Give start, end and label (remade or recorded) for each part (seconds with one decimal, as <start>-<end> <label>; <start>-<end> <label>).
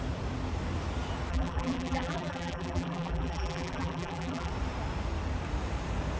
0.0-1.3 recorded; 1.3-4.5 remade; 4.5-6.2 recorded